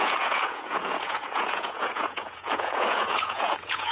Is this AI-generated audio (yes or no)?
yes